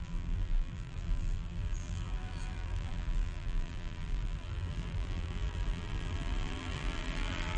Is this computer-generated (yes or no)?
yes